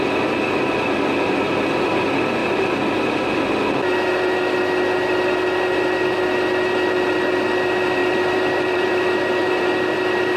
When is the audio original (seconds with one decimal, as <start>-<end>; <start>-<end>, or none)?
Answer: 0.0-8.0; 9.0-9.4